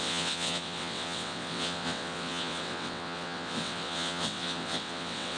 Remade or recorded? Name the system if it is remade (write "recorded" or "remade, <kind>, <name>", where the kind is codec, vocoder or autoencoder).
remade, vocoder, WaveNeXt